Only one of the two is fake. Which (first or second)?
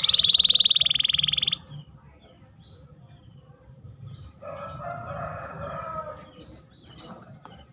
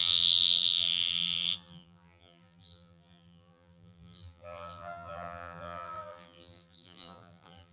second